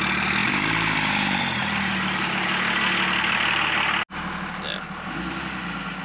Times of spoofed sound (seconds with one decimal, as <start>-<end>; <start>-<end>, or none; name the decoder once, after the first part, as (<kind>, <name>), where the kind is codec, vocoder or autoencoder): 0.4-2.3 (vocoder, BigVGAN v2)